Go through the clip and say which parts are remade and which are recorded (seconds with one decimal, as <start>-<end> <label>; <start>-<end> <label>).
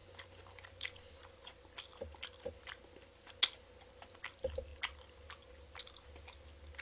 0.0-6.8 recorded